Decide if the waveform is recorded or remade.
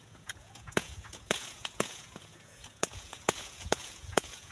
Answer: remade